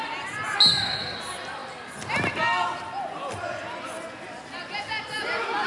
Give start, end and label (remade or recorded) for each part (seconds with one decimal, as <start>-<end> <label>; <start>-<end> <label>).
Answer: 0.0-5.7 recorded